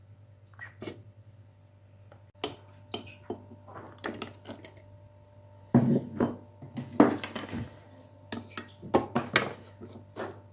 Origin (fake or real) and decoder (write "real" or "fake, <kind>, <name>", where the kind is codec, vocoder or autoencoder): real